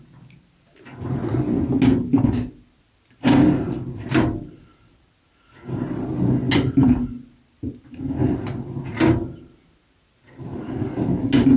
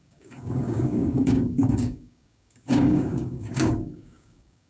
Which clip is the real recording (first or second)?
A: first